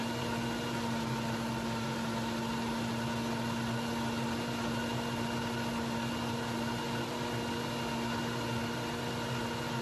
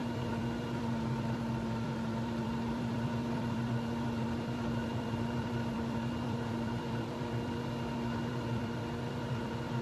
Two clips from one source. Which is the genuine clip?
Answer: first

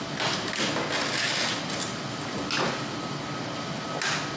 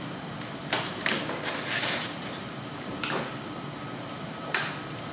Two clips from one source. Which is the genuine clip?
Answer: first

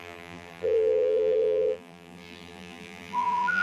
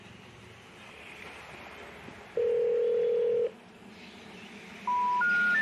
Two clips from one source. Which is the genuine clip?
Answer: second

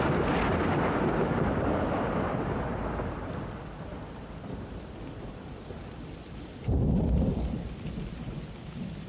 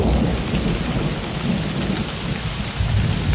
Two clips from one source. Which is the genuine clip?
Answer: second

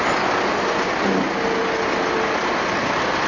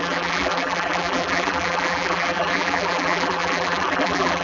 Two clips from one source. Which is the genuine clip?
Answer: first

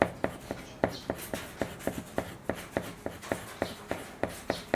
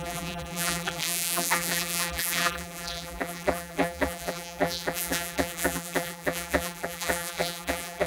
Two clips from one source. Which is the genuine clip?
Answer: first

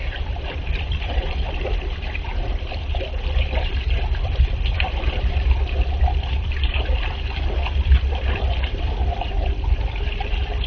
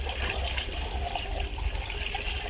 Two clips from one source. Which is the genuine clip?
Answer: second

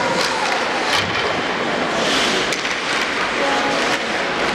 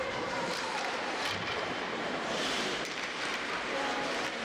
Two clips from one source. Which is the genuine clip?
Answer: first